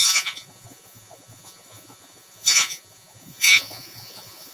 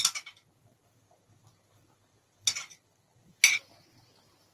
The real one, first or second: second